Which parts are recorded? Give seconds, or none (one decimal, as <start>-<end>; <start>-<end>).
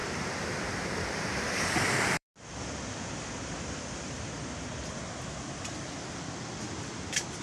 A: 0.0-1.1; 2.3-6.7